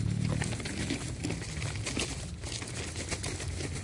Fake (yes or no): no